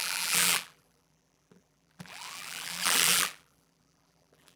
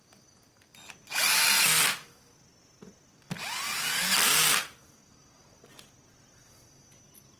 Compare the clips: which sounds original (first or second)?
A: second